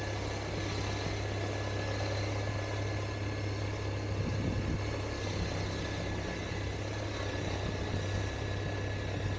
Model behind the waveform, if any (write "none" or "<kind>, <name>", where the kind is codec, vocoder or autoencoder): none